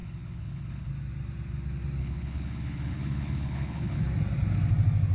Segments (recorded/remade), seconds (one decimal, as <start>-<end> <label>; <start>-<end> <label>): 0.0-0.9 remade; 0.9-2.0 recorded; 2.0-4.0 remade; 4.0-5.1 recorded